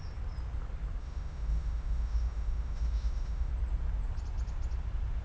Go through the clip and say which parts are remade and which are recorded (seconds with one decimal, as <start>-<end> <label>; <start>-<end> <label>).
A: 0.0-1.0 recorded; 1.0-3.5 remade; 3.5-5.2 recorded